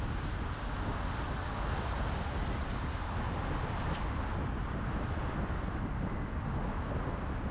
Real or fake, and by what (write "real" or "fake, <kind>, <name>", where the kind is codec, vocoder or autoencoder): real